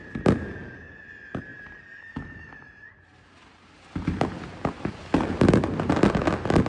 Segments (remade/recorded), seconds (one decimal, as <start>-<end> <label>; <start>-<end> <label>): 0.0-6.7 recorded